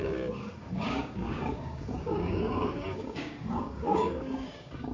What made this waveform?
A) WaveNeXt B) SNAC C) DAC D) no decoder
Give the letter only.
C